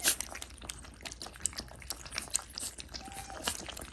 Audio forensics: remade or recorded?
recorded